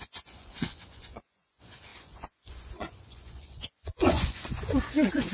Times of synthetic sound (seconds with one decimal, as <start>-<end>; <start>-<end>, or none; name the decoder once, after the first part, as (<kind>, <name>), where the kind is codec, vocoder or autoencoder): 0.0-5.3 (vocoder, Vocos)